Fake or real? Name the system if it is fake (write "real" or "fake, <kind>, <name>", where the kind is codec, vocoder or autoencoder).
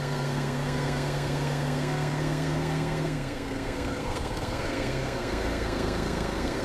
fake, codec, SNAC